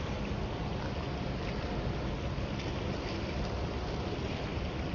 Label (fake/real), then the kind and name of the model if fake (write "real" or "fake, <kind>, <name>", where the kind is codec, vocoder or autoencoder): real